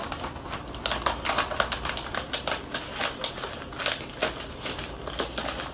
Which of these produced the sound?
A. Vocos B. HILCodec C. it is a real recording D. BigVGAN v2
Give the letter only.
C